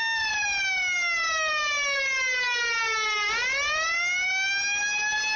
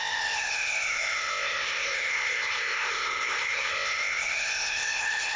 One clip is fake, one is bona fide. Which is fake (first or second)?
second